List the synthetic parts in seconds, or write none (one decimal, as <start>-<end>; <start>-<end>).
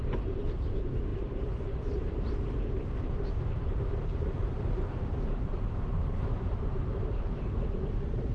0.0-8.3